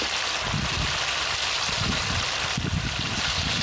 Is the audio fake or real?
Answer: real